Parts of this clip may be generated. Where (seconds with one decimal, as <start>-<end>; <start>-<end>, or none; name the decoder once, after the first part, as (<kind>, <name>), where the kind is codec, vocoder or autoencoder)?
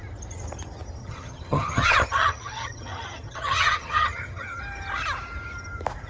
1.0-4.6 (vocoder, HiFi-GAN)